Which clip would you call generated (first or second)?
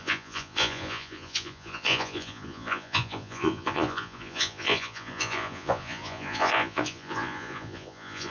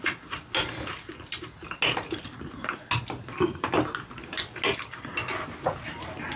first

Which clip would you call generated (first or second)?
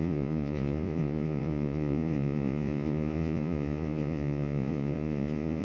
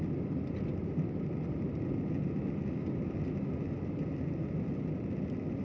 first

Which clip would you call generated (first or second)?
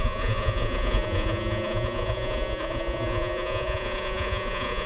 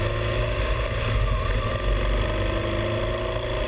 first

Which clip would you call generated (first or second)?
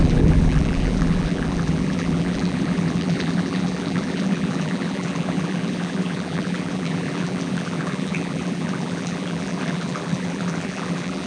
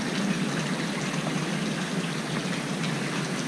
first